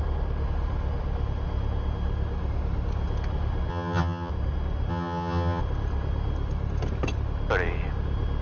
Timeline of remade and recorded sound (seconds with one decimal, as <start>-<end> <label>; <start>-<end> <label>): 0.0-3.7 recorded; 3.7-4.3 remade; 4.3-4.9 recorded; 4.9-5.6 remade; 5.6-8.4 recorded